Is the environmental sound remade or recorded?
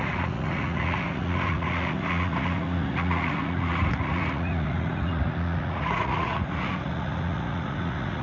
remade